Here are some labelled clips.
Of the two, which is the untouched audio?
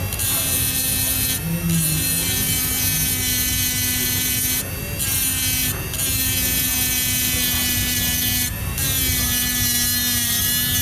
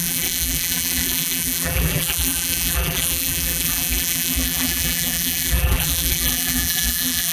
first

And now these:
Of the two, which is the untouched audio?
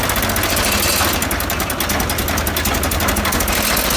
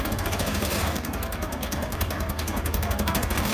first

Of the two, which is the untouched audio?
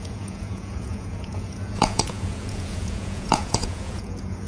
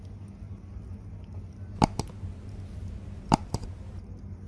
second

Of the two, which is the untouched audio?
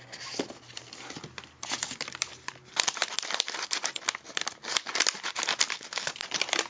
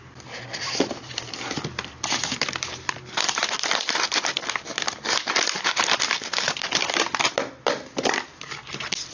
first